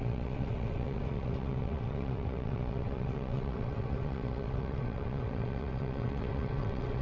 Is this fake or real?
fake